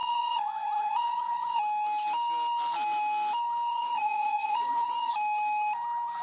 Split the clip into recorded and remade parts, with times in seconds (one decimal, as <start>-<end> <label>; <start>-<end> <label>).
0.0-1.6 remade; 1.6-3.7 recorded; 3.7-5.1 remade; 5.1-6.2 recorded